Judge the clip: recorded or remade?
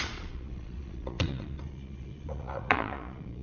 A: remade